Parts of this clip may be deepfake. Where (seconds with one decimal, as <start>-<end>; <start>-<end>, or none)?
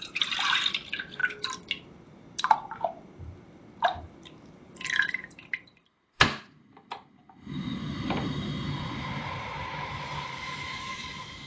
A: 0.0-1.2; 5.1-11.5